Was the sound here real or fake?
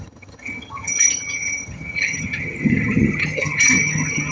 fake